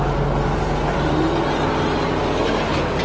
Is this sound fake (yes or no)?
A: no